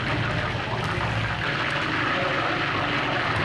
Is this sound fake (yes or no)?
no